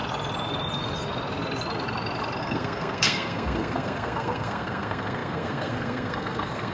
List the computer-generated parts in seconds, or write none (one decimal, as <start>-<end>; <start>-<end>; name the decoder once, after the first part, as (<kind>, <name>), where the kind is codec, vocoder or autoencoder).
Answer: 2.4-6.7 (codec, SNAC)